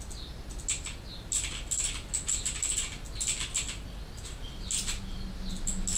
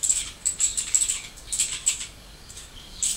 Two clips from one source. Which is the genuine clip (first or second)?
first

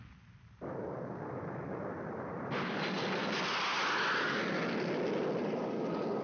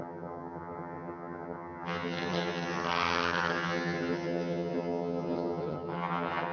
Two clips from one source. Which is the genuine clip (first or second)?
first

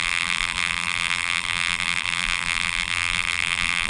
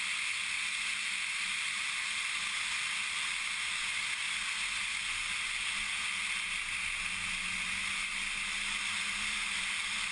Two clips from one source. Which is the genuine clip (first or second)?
second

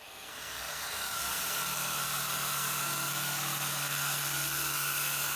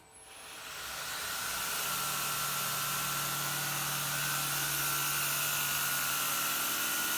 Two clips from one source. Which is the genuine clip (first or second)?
second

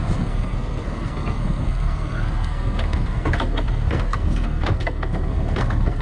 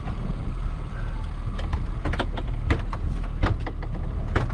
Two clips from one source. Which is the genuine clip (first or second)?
second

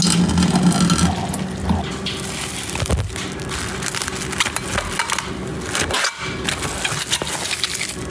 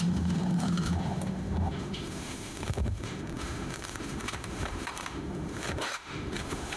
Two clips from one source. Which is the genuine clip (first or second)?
first